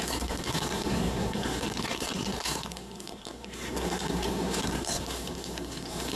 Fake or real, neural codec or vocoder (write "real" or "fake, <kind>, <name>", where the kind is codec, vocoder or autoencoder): fake, codec, SNAC